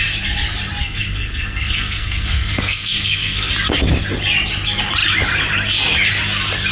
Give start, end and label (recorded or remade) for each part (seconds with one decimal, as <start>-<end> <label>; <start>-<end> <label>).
0.0-0.8 recorded; 0.8-3.5 remade; 3.5-6.7 recorded